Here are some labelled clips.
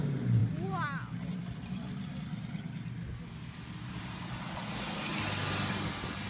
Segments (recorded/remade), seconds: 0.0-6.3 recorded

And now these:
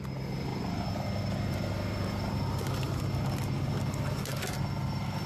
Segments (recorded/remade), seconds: 0.0-5.3 recorded

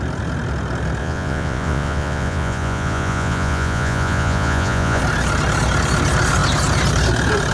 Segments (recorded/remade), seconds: 0.0-1.0 recorded; 1.0-5.0 remade; 5.0-7.5 recorded

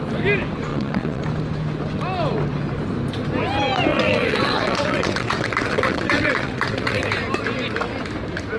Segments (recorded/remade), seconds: 0.0-0.7 recorded; 0.7-1.2 remade; 1.2-3.9 recorded; 3.9-7.1 remade; 7.1-8.6 recorded